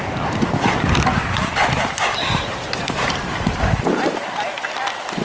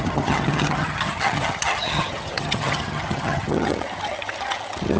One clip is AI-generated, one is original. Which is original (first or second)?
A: first